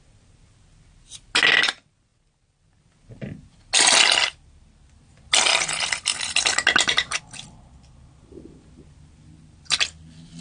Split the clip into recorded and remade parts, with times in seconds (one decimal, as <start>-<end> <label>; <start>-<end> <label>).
0.0-10.4 recorded